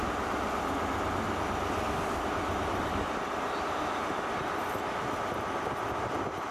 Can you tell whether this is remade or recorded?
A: recorded